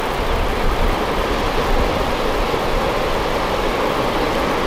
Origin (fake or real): real